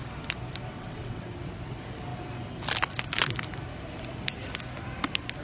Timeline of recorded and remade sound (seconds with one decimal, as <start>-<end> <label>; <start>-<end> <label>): 0.0-0.7 recorded; 0.7-1.3 remade; 1.3-5.4 recorded